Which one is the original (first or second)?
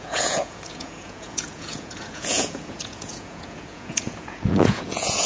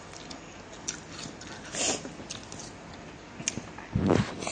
second